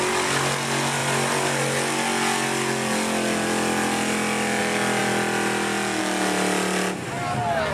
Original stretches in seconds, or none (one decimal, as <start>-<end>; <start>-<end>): 0.0-7.7